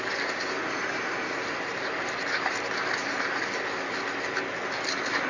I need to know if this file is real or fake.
real